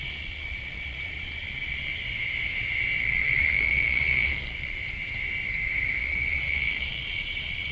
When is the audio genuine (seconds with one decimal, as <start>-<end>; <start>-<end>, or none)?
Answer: 1.9-3.0; 4.8-6.0